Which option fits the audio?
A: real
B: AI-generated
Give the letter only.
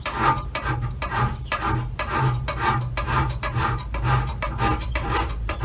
B